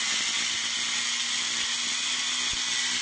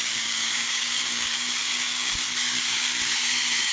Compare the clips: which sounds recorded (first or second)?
first